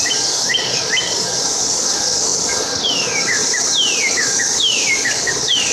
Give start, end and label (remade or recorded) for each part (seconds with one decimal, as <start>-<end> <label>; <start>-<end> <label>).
0.0-3.4 remade; 3.4-4.0 recorded; 4.0-5.7 remade